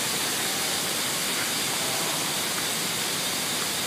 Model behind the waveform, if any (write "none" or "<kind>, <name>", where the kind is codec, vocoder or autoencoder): none